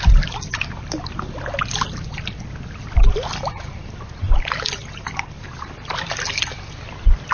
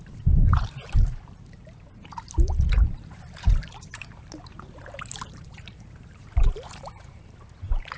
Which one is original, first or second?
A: first